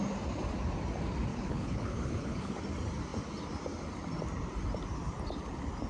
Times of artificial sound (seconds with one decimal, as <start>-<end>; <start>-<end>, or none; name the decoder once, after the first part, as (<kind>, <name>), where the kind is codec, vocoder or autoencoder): 1.3-2.5 (codec, HILCodec)